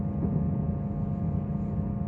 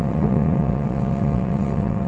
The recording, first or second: first